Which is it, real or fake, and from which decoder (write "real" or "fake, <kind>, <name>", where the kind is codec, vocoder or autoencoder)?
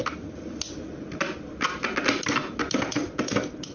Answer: real